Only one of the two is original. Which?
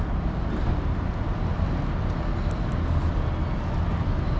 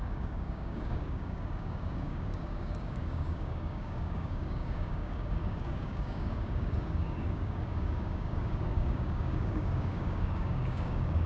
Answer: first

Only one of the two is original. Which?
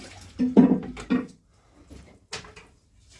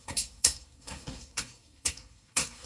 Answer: first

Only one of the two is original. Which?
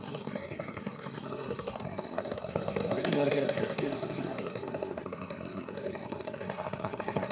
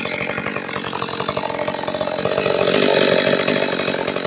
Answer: second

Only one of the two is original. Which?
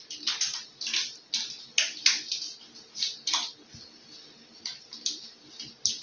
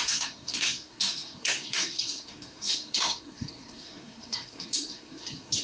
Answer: first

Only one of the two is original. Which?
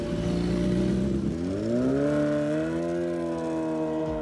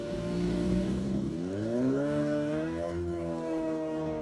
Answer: first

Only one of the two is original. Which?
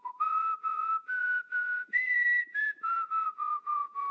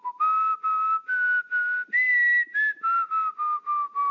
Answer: second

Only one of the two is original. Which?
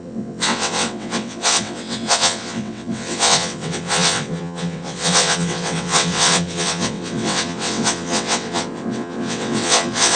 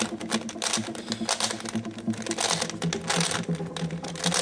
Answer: second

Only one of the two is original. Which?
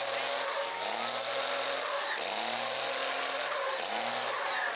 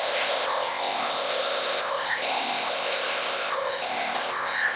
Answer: first